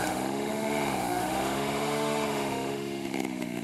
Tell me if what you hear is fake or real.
fake